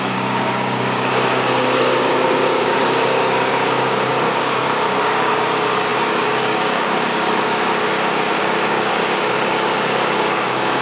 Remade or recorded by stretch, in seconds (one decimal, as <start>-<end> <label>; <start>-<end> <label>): 0.0-10.8 remade